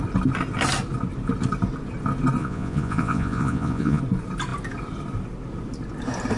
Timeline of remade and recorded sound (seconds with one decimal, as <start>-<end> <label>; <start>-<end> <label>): 0.0-2.4 recorded; 2.4-4.0 remade; 4.0-6.4 recorded